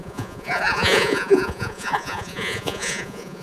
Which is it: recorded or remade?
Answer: remade